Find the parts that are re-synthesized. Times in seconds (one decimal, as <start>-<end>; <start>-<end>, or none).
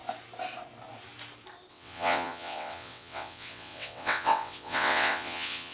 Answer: 1.7-5.7